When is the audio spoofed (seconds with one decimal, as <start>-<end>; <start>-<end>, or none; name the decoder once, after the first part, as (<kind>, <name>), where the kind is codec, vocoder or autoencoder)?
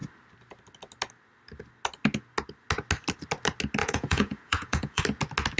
3.8-5.0 (vocoder, Vocos)